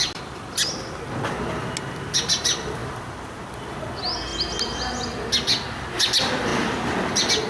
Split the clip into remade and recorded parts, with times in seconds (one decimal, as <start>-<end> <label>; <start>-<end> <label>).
0.0-7.5 recorded